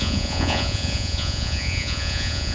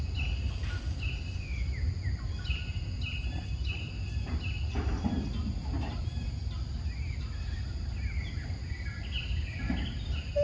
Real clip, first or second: second